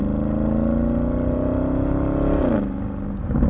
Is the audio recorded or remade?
recorded